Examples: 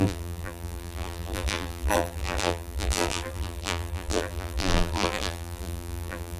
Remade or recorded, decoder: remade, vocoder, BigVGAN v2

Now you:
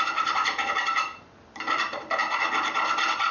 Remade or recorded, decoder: recorded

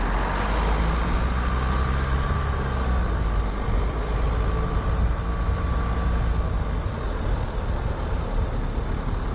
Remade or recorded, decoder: recorded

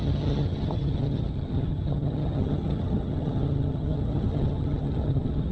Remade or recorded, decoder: remade, vocoder, HiFi-GAN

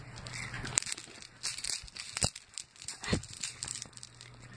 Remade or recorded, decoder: recorded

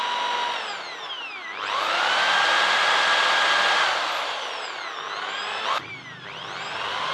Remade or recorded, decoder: recorded